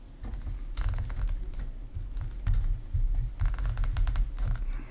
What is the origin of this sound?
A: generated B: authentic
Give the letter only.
B